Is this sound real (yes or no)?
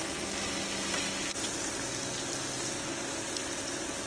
yes